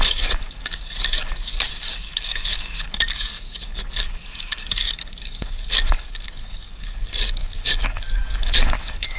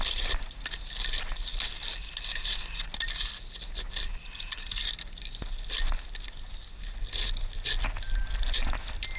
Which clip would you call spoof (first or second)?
first